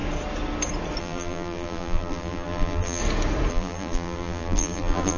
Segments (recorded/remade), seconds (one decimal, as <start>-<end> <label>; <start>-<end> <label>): 0.0-1.0 recorded; 1.0-3.0 remade; 3.0-3.5 recorded; 3.5-5.2 remade